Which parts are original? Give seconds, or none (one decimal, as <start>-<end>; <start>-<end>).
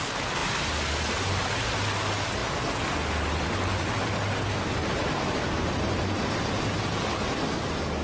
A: 0.0-4.8; 6.6-8.0